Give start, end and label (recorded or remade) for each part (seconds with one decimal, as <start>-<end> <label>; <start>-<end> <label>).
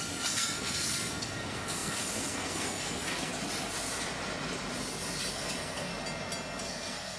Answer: 0.0-3.3 remade; 3.3-5.2 recorded; 5.2-5.9 remade; 5.9-6.6 recorded; 6.6-7.2 remade